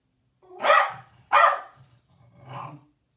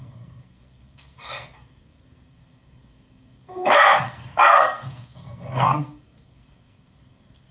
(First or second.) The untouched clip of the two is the first